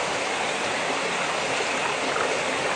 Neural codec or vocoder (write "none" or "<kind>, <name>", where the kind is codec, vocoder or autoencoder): none